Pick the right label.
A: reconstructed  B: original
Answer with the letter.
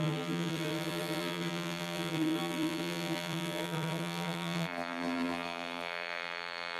A